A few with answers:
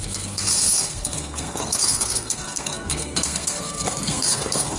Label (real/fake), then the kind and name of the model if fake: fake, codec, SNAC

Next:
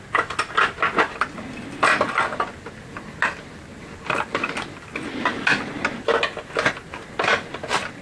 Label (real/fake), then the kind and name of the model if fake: real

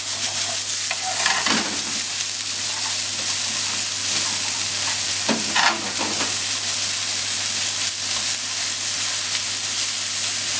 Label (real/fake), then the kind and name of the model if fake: real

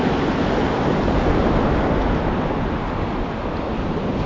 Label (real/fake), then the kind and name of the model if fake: real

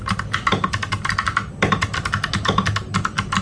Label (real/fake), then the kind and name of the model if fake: real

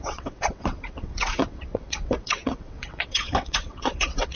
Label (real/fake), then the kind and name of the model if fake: fake, vocoder, WaveNeXt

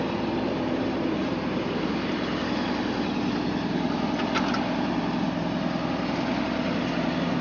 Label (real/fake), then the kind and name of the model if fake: real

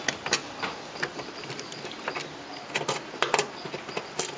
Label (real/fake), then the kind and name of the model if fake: real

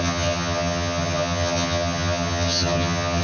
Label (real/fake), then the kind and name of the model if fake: fake, vocoder, HiFi-GAN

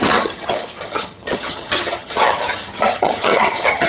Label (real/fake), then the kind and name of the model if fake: fake, vocoder, HiFi-GAN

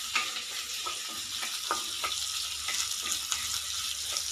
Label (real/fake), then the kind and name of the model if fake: real